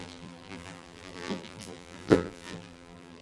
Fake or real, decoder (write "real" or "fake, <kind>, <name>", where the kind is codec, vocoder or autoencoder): fake, vocoder, BigVGAN v2